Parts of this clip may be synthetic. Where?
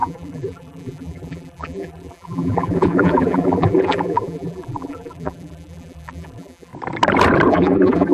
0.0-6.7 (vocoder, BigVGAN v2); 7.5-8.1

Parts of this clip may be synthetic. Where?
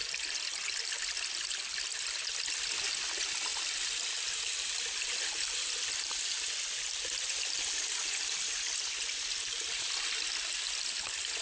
none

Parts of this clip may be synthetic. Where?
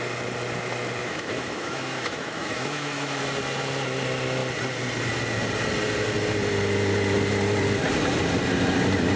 1.0-3.2 (autoencoder, DAC-VAE)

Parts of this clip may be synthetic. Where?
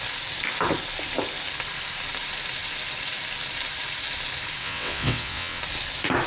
4.6-5.6 (vocoder, WaveNeXt)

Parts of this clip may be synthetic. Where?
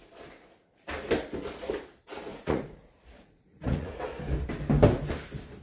2.3-4.0 (vocoder, Vocos)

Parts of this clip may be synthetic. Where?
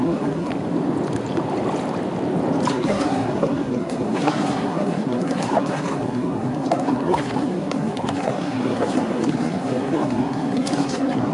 0.0-0.5 (codec, SNAC); 2.7-11.3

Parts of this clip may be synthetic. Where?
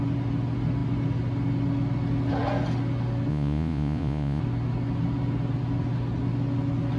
3.3-4.4 (vocoder, Vocos)